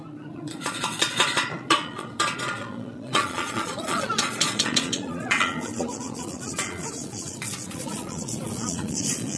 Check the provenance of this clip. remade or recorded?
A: remade